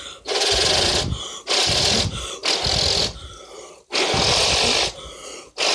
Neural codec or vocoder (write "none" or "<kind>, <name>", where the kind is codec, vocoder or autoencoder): none